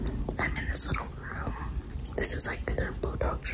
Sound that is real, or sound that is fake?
real